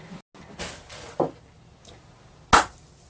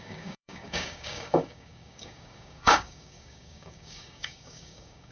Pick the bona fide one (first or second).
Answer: first